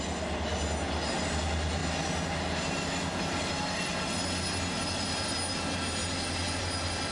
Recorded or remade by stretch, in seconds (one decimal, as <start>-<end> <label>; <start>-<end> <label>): 0.0-7.1 recorded